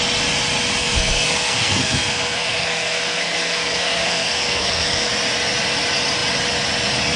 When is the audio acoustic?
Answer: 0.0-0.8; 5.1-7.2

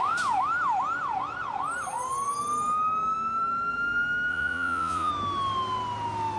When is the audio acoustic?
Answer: 0.0-4.3; 5.1-6.4

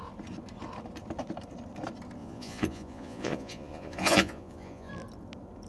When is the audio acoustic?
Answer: 0.0-2.2; 4.9-5.7

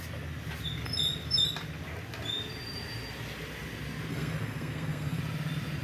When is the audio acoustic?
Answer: 0.0-4.1; 5.2-5.8

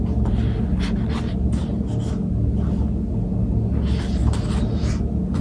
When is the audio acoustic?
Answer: 0.0-5.4